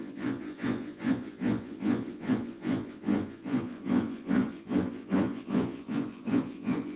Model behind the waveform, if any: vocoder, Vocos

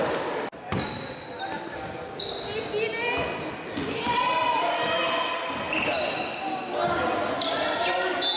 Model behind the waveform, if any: none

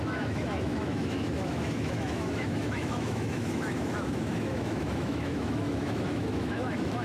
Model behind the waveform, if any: autoencoder, DAC-VAE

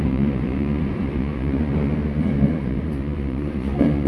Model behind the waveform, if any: vocoder, Vocos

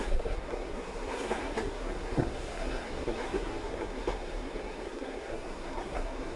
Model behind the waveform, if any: codec, SNAC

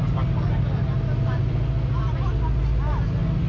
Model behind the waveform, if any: none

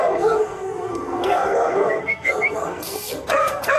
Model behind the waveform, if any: codec, SNAC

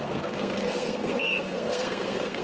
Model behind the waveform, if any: codec, SNAC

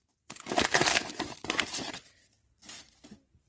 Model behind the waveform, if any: vocoder, BigVGAN v2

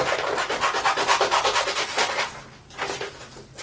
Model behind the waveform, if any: none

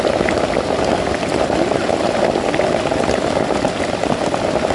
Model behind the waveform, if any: none